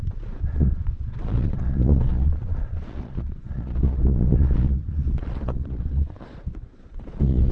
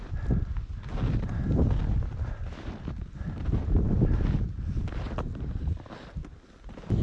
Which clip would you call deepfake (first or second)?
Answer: first